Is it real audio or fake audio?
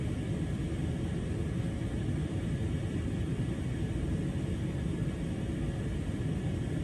real